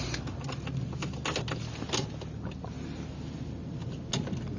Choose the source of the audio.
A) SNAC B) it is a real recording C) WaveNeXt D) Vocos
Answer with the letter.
B